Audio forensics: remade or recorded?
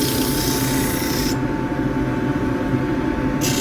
recorded